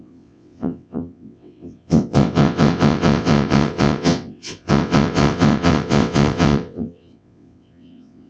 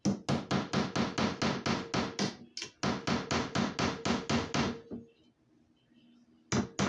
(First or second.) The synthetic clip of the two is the first